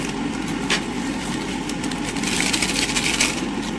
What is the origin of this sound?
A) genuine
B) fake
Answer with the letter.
A